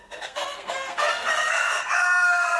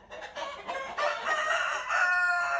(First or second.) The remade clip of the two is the first